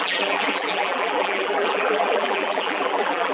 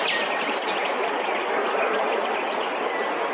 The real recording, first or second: second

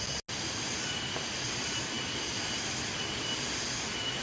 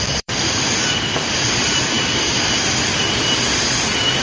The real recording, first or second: first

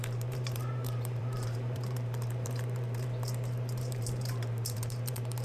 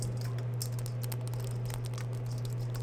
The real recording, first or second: second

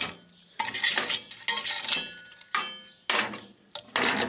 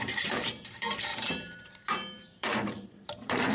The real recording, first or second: first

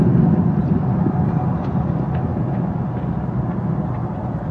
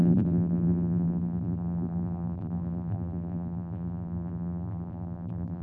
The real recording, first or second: first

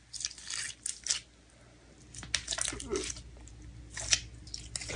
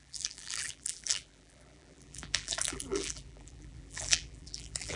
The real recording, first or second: first